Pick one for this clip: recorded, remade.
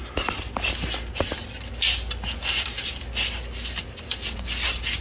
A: recorded